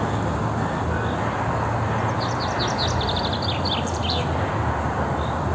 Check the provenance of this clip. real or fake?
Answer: real